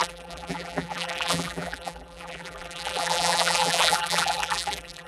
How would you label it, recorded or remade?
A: remade